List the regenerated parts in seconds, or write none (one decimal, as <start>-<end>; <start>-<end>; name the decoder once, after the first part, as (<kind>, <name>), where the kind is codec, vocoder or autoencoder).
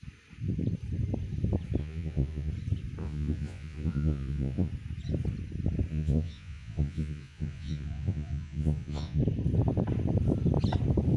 1.8-2.5 (vocoder, Vocos); 3.0-4.7; 5.9-9.2